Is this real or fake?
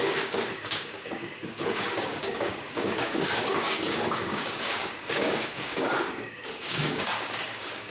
fake